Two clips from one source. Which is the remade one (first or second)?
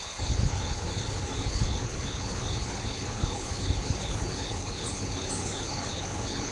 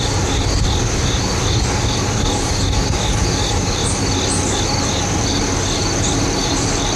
first